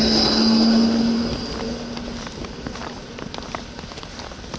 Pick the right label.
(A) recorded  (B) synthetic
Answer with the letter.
A